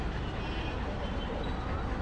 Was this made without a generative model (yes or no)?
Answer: yes